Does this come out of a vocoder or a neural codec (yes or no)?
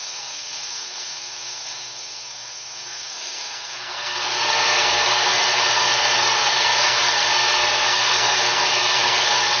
yes